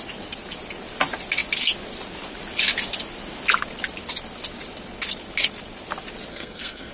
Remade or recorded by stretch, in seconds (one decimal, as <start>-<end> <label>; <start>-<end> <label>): 0.0-6.3 recorded; 6.3-6.9 remade